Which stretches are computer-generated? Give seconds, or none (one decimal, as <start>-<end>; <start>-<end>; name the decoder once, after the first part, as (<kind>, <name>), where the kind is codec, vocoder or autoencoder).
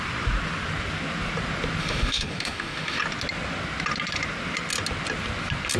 1.8-3.0 (autoencoder, DAC-VAE)